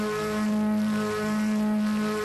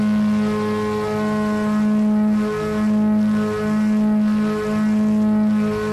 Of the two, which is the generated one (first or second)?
first